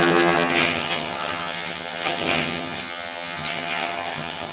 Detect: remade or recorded remade